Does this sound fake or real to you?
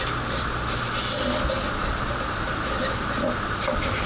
real